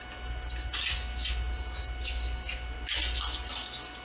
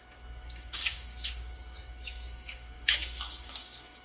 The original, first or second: first